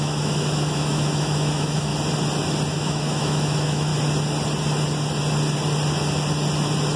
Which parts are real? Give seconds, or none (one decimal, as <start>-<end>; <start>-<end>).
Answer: 1.9-2.7; 3.9-7.0

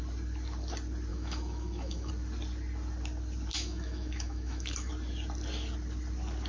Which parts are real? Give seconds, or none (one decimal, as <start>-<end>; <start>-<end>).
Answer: 0.0-1.1; 2.1-3.5; 4.9-6.5

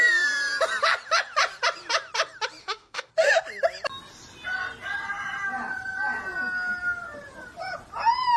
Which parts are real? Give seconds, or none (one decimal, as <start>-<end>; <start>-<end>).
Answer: 0.0-2.6; 3.1-8.4

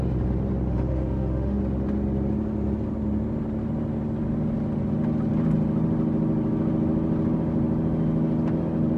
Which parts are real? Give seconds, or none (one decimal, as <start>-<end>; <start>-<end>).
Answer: 0.0-0.7; 1.6-9.0

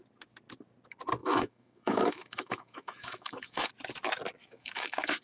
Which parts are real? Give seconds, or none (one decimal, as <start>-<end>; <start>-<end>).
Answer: 0.0-1.2; 3.7-4.4